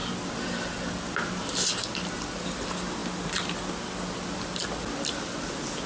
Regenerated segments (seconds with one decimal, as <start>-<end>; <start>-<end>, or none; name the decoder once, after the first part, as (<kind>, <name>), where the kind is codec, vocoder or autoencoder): none